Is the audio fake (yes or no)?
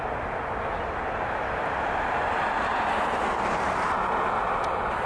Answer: no